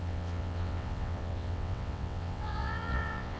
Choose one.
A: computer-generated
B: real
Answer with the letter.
A